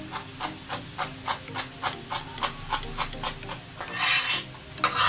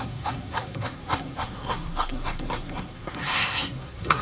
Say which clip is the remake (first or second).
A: second